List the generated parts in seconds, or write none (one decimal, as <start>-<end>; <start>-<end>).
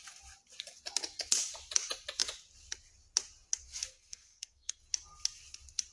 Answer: 3.9-4.8